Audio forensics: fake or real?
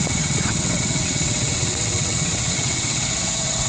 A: fake